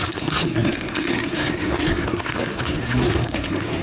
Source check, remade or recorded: remade